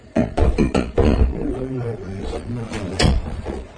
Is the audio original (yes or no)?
no